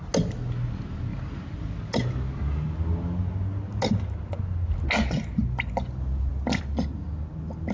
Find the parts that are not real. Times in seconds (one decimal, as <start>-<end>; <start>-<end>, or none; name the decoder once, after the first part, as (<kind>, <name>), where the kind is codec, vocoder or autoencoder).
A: none